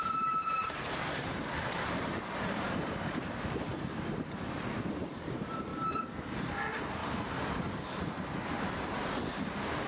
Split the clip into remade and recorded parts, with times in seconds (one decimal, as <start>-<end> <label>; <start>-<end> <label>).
0.0-3.7 remade; 3.7-4.9 recorded; 4.9-5.7 remade; 5.7-6.5 recorded; 6.5-7.0 remade; 7.0-8.6 recorded; 8.6-9.9 remade